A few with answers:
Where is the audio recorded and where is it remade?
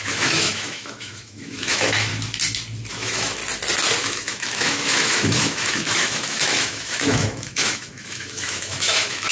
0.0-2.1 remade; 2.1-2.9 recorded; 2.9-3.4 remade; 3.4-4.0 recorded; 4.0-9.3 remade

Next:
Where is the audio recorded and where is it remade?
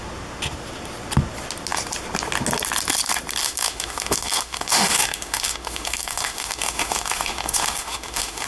0.0-3.4 recorded; 3.4-8.5 remade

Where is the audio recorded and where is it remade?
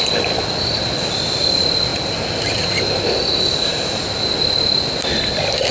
0.0-5.7 recorded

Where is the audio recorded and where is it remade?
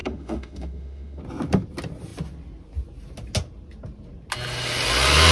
0.0-1.2 remade; 1.2-5.3 recorded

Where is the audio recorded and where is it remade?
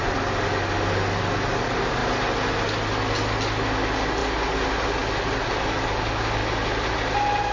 0.0-7.5 recorded